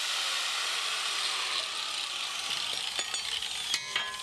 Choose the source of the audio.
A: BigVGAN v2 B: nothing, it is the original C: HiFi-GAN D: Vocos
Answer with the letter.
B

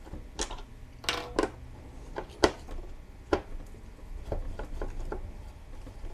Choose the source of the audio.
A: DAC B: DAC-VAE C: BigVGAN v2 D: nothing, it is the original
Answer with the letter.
D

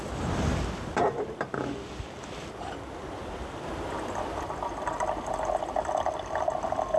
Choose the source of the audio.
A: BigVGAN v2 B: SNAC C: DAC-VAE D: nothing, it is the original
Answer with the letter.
D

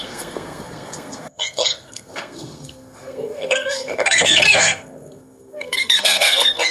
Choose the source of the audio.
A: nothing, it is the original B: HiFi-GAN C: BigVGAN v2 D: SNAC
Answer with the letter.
D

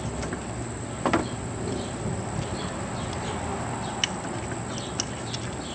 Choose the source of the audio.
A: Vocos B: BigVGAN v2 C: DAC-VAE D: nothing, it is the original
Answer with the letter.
D